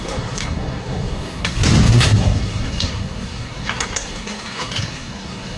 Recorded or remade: remade